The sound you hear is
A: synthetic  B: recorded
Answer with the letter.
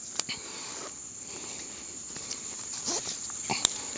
B